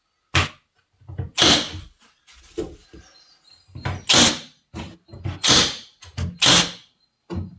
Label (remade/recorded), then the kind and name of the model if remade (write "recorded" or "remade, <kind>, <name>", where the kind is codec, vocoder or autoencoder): recorded